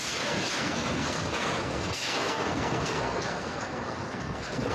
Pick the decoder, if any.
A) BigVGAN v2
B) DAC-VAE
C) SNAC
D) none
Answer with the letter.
C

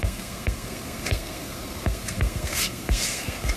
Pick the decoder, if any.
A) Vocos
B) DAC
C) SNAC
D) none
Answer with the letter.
C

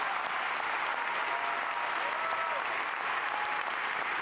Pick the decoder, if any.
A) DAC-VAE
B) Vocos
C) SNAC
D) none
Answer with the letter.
D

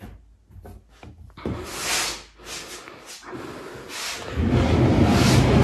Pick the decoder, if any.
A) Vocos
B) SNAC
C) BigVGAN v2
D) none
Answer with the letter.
D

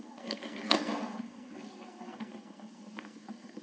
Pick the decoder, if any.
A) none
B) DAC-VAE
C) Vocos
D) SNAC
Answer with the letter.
D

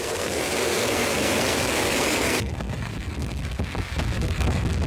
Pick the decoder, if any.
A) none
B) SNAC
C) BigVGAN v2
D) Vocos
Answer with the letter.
B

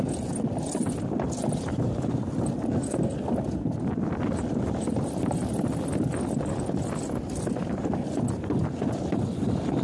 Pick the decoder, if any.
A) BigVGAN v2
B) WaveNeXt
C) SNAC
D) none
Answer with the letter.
D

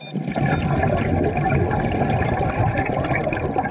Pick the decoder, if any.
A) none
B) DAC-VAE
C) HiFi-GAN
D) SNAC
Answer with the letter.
A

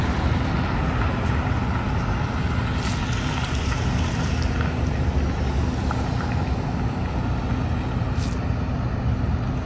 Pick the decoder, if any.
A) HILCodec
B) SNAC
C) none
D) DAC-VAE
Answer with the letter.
C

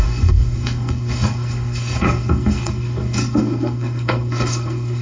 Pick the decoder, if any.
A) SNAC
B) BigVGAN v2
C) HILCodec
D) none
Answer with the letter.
A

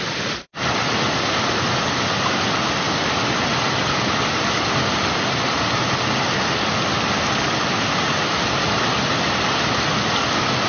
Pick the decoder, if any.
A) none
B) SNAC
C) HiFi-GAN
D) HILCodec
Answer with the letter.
A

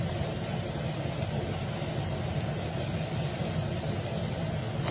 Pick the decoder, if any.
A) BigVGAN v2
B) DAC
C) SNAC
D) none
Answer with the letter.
D